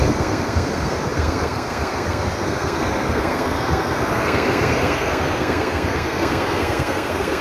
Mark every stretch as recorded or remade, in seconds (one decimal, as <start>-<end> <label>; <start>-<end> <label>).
0.0-7.4 remade